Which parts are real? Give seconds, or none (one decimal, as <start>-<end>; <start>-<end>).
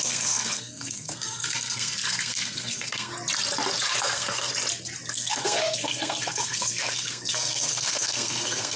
3.1-4.0; 4.5-5.1